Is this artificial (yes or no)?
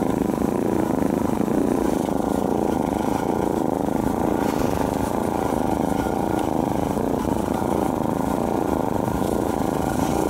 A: yes